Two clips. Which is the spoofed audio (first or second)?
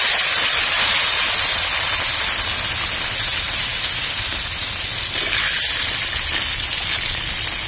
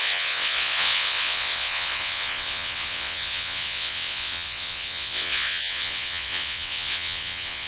second